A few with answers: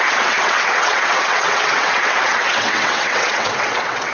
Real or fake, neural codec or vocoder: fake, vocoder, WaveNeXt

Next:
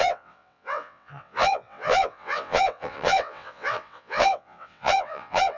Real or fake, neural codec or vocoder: fake, vocoder, WaveNeXt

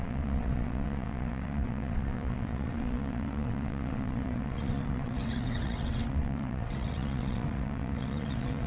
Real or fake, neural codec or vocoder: fake, vocoder, WaveNeXt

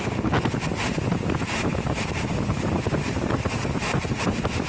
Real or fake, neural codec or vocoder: real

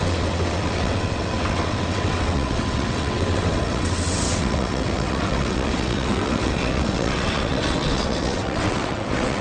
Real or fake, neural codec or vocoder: fake, vocoder, WaveNeXt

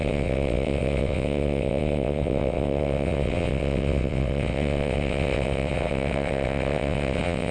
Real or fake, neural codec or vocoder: fake, vocoder, WaveNeXt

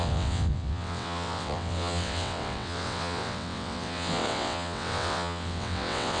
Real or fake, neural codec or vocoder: fake, vocoder, WaveNeXt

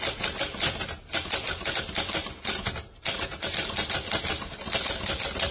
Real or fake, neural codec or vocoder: real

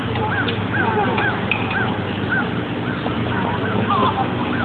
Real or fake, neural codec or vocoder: real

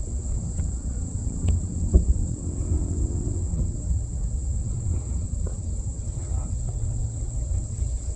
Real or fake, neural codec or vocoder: fake, vocoder, WaveNeXt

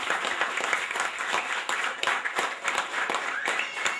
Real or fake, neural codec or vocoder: real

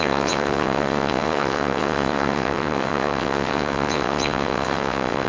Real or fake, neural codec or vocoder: fake, vocoder, WaveNeXt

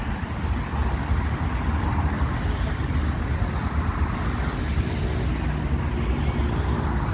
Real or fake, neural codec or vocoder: real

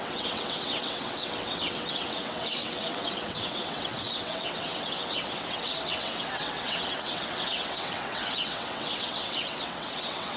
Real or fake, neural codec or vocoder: fake, vocoder, WaveNeXt